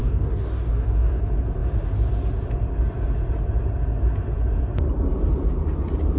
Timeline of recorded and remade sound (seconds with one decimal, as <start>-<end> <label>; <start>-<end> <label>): 0.0-1.2 remade; 1.2-6.2 recorded